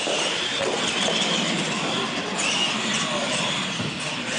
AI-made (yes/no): no